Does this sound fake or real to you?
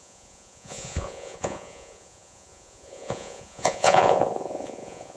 fake